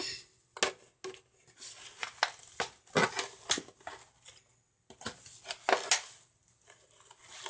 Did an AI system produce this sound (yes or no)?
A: no